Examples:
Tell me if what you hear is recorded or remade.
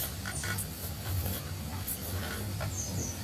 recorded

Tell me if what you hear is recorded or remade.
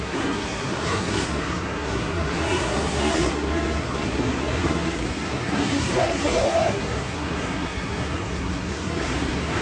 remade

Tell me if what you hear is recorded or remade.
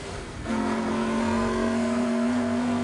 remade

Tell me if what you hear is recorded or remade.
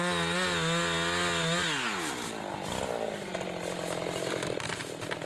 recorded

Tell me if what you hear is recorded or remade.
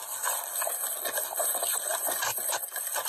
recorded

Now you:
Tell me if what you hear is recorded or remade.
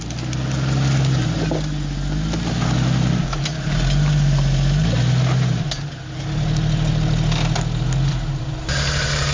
recorded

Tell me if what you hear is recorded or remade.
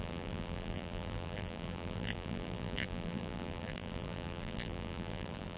remade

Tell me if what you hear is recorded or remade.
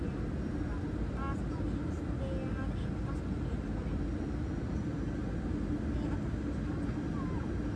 recorded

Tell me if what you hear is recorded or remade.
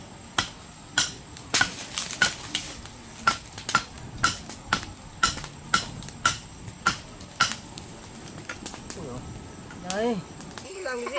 recorded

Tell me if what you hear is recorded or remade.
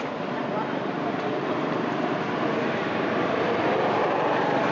recorded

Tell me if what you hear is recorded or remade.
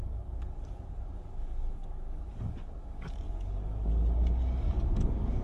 remade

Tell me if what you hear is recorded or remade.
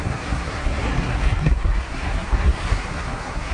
remade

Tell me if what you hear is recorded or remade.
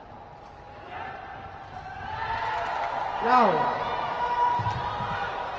recorded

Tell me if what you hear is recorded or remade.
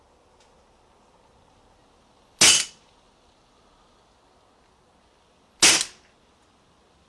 recorded